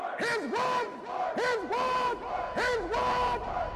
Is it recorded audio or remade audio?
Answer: recorded